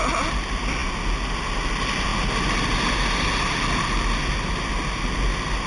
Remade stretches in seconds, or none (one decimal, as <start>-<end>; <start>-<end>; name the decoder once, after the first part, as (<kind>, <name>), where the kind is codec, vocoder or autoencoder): none